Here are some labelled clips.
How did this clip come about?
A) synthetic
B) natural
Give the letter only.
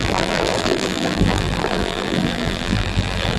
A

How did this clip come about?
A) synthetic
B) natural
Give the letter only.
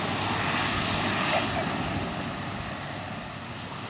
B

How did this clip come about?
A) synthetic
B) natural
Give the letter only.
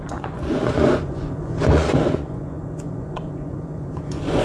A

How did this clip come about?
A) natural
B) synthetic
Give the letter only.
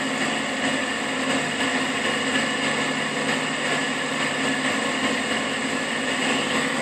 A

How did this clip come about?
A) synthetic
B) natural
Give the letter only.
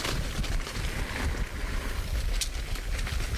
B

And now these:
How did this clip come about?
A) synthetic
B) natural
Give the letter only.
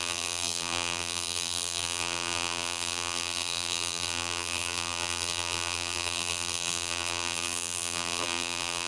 A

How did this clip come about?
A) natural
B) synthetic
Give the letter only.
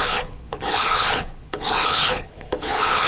B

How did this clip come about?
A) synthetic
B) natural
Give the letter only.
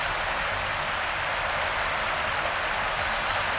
B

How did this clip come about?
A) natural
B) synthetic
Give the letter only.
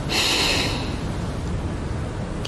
A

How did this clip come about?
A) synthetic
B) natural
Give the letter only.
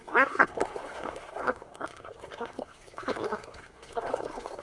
A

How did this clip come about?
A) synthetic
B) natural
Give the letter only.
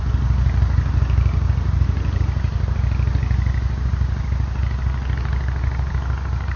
B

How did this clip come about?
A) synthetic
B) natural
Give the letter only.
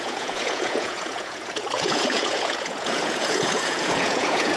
A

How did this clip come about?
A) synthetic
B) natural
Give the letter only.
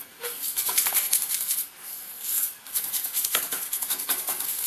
A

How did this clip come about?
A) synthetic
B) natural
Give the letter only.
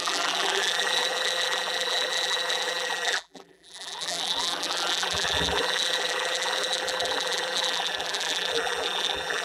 A